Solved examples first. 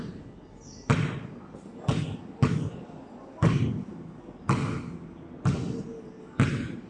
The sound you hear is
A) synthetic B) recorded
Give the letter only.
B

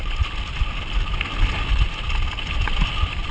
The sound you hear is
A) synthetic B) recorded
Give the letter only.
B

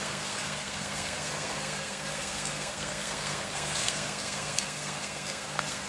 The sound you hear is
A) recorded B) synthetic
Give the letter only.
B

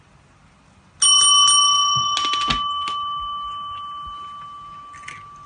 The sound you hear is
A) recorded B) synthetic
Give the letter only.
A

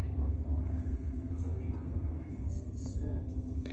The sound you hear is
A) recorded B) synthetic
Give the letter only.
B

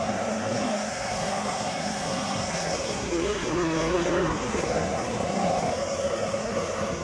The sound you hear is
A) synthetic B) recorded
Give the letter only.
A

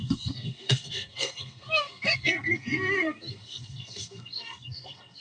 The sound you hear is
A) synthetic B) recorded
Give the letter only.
A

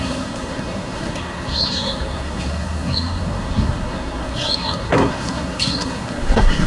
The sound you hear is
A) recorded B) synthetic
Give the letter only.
B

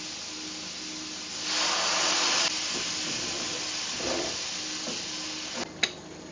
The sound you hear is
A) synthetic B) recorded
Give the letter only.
B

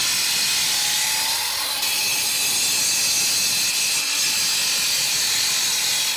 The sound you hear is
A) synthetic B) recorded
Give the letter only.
B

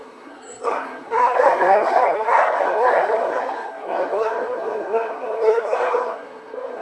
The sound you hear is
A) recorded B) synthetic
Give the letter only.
B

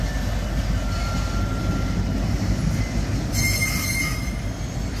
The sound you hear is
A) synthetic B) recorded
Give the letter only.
B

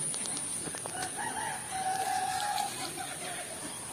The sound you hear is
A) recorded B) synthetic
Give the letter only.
A